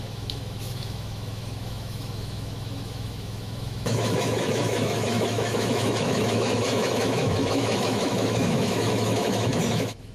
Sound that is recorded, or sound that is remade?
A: remade